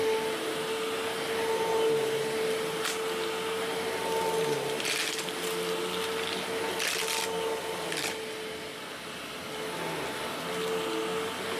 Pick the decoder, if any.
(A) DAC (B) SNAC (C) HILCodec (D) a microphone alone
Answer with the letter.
D